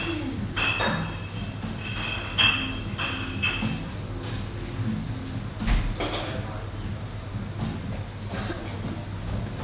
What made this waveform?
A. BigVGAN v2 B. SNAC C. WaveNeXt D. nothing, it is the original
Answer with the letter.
D